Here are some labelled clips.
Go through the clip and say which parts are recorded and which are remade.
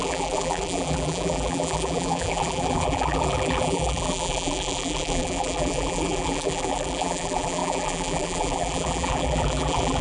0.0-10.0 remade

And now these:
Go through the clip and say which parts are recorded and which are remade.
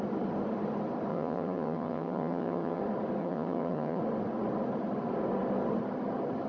0.0-1.1 recorded; 1.1-2.8 remade; 2.8-3.2 recorded; 3.2-4.0 remade; 4.0-6.5 recorded